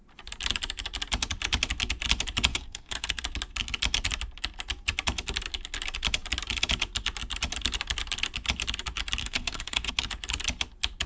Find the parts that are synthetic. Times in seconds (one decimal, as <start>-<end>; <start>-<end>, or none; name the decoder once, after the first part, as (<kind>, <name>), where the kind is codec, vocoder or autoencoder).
2.5-3.2 (codec, SNAC); 9.2-9.9